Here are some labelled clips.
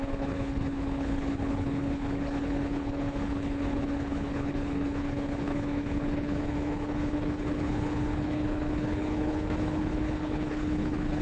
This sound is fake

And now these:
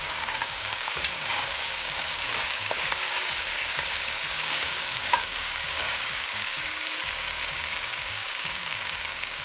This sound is fake